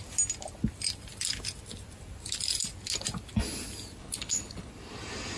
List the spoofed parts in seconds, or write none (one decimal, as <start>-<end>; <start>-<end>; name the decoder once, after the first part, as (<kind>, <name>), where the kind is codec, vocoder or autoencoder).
4.0-4.7 (codec, HILCodec)